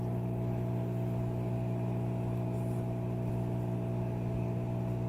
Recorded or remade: recorded